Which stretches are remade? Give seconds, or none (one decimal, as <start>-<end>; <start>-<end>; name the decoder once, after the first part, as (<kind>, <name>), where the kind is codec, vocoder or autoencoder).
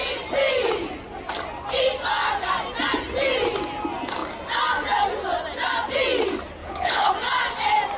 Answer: 6.6-7.1 (codec, HILCodec)